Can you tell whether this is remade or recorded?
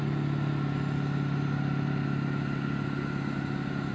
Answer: recorded